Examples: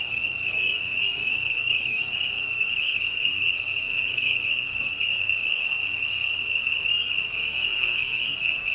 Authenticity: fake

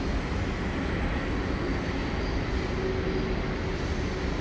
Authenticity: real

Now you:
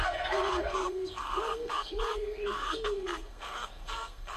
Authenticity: fake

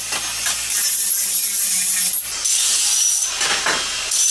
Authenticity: real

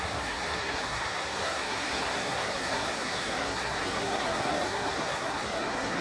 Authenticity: fake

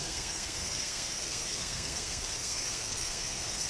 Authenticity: fake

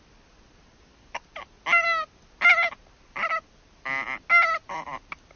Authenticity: real